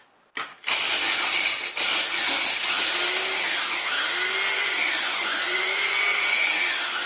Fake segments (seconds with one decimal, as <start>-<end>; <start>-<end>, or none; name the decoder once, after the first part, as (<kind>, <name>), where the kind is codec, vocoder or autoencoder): 4.5-6.5 (vocoder, Vocos)